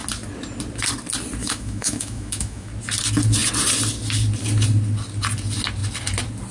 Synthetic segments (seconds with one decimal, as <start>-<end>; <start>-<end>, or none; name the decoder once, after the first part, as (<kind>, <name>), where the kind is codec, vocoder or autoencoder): 1.4-2.7 (autoencoder, DAC-VAE)